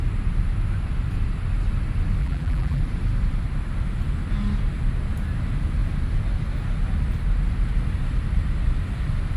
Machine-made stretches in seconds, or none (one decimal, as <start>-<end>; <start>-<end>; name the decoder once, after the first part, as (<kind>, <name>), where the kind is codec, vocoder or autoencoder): 2.2-2.8 (vocoder, BigVGAN v2)